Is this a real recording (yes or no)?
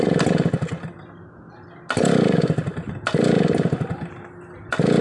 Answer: yes